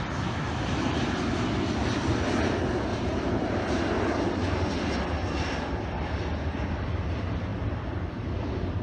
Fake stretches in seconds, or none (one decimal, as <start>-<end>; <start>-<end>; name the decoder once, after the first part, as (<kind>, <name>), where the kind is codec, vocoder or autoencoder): 2.9-3.9 (vocoder, BigVGAN v2)

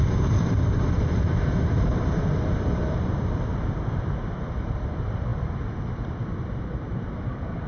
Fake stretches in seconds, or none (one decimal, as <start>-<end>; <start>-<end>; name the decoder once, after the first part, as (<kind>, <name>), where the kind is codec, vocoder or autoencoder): 0.0-3.5 (vocoder, BigVGAN v2); 4.3-7.7

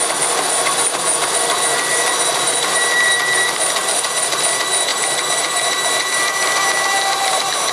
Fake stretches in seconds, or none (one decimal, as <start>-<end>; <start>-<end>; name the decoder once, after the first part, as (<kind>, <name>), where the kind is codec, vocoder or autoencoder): none